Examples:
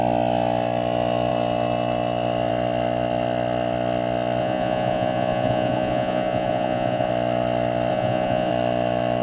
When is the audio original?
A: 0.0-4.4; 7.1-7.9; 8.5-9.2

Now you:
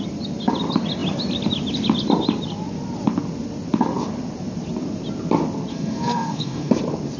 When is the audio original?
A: 0.0-5.7; 6.7-7.2

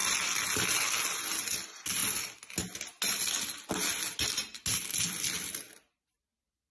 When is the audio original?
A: 0.0-6.7

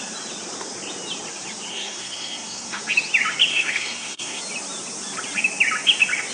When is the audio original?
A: 0.0-1.7; 2.8-3.5; 4.4-6.3

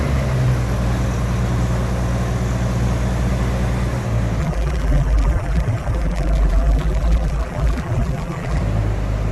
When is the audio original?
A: 0.0-4.4; 8.6-9.3

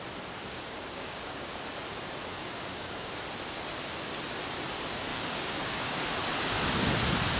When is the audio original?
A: 0.0-0.4; 1.5-2.4; 3.1-5.1; 6.0-7.4

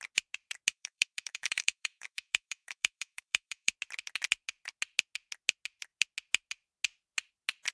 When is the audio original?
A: 0.0-0.7; 3.7-7.7

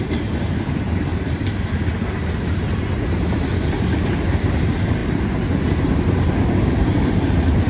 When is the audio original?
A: 0.0-7.7